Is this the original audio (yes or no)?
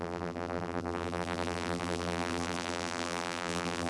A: no